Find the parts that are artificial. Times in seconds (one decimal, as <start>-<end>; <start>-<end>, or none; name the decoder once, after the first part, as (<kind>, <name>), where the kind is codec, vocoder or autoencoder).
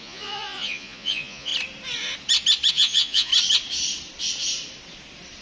0.0-1.5 (vocoder, Vocos); 2.7-3.3